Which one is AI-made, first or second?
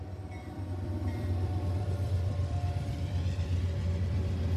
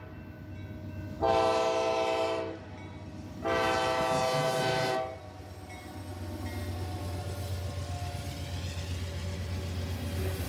first